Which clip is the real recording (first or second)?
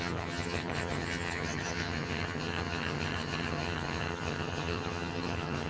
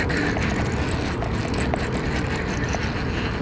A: second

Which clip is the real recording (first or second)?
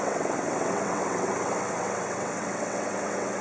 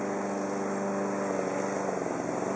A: second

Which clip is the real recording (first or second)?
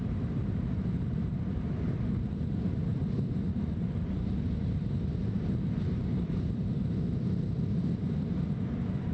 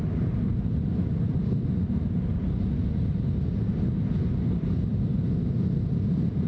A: second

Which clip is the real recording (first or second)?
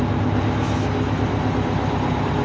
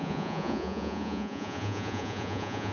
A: first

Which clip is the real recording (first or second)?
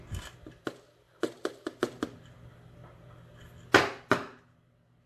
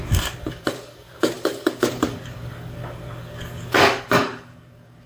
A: first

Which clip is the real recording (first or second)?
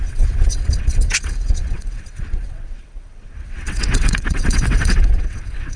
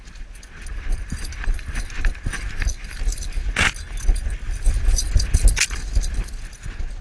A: second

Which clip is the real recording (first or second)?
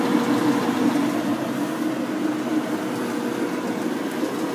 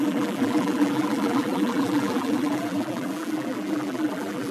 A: first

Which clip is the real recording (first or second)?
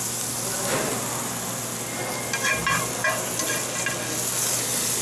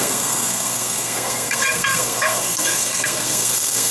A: first